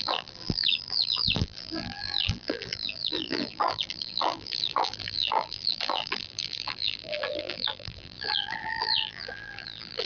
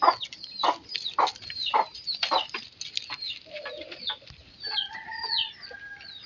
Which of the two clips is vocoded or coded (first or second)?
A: first